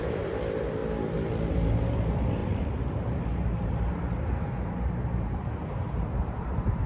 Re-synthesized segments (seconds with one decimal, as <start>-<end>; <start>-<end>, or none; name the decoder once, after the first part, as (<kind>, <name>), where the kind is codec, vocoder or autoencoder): 0.0-0.8 (vocoder, BigVGAN v2); 1.5-6.9